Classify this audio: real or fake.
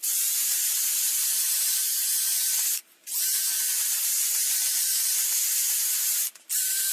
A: fake